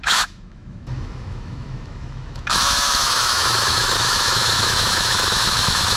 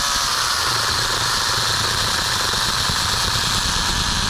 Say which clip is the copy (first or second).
first